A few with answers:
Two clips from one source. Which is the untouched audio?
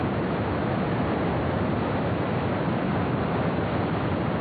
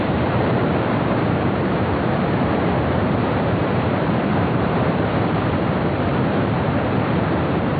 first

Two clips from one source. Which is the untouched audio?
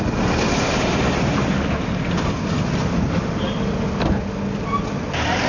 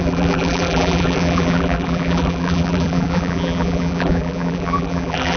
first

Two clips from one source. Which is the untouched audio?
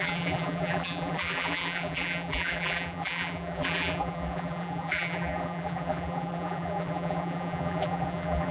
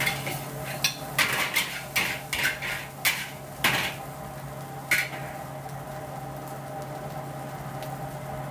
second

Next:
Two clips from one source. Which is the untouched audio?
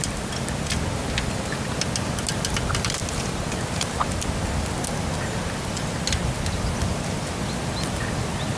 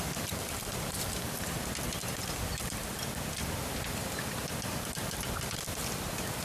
first